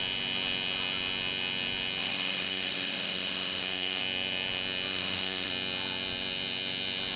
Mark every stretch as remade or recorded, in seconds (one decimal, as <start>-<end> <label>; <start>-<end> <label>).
0.0-2.0 recorded; 2.0-4.0 remade; 4.0-4.9 recorded; 4.9-5.5 remade; 5.5-7.2 recorded